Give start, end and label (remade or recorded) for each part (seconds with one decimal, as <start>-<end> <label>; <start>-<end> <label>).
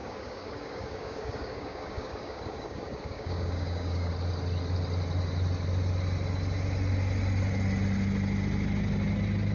0.0-4.1 remade; 4.1-9.5 recorded